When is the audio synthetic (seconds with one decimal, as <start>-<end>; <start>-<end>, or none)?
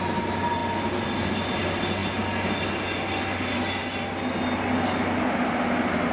none